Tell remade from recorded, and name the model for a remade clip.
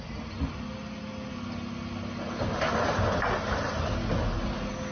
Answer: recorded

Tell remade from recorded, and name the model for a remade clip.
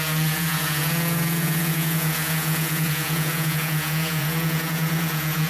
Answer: remade, vocoder, Vocos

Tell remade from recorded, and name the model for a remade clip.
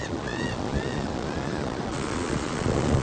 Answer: remade, vocoder, Vocos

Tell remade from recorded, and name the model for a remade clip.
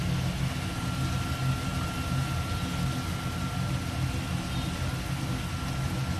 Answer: recorded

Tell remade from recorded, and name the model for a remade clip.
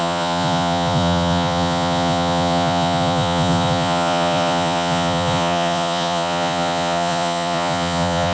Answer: remade, vocoder, Vocos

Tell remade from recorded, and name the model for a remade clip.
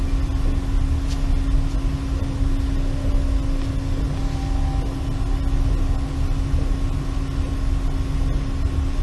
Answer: recorded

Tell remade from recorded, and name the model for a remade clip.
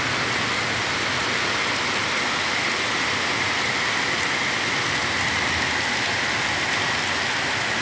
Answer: recorded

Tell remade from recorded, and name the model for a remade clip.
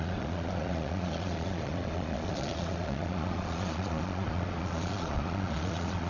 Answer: remade, vocoder, Vocos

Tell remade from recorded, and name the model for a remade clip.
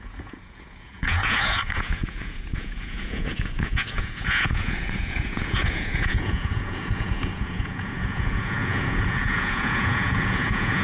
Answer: remade, vocoder, Vocos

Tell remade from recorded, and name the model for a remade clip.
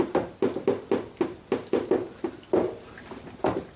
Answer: recorded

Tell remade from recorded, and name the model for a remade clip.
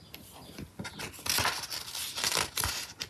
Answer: recorded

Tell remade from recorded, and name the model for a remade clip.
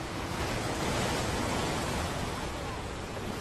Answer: remade, vocoder, Vocos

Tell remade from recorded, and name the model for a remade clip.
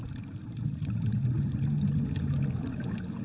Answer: recorded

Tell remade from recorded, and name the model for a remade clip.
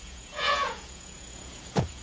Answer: remade, vocoder, Vocos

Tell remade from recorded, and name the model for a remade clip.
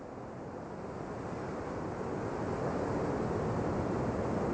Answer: recorded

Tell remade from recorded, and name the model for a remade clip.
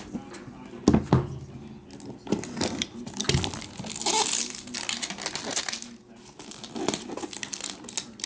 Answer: recorded